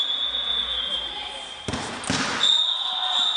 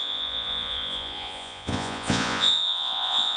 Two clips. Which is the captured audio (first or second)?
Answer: first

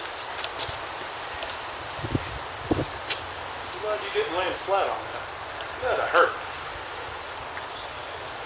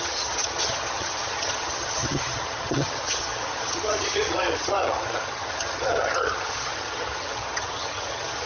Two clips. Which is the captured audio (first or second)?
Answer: first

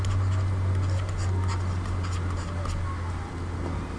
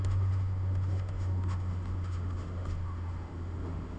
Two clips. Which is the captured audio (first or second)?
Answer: first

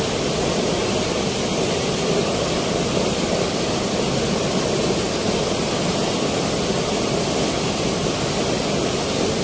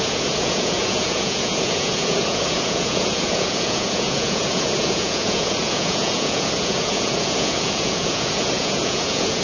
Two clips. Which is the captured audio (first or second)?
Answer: first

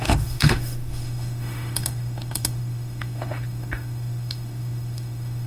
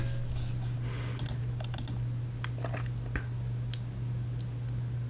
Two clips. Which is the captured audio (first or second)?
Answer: second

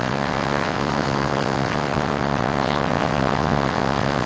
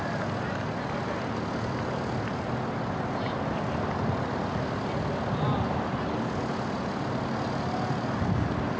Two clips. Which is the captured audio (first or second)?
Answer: second